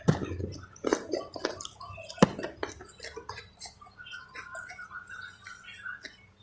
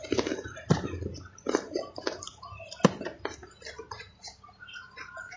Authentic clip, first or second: first